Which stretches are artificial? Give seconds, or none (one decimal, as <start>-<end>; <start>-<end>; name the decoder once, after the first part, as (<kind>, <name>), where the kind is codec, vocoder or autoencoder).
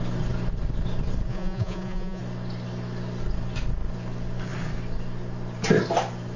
1.3-2.2 (vocoder, Vocos)